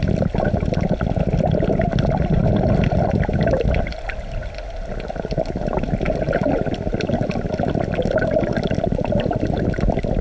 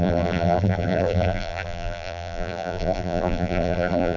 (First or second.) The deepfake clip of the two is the second